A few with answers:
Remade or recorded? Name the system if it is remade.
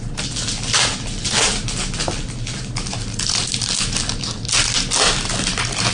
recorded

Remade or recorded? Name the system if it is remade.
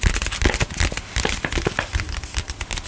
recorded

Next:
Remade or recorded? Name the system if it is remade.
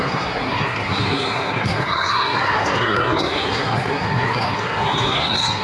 remade, codec, SNAC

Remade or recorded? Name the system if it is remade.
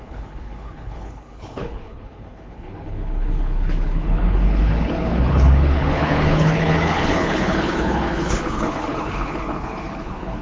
remade, codec, HILCodec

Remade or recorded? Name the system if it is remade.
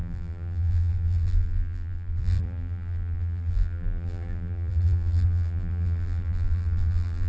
remade, vocoder, BigVGAN v2